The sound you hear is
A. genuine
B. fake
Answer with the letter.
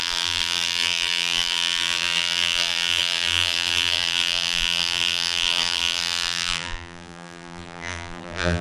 B